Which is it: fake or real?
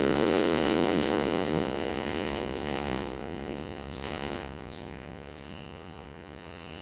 fake